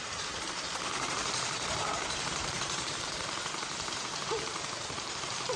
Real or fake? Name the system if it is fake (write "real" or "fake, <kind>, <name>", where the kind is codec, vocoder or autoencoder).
fake, vocoder, BigVGAN v2